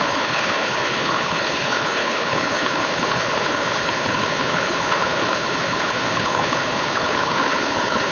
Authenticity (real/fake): fake